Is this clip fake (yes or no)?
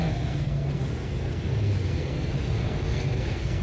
yes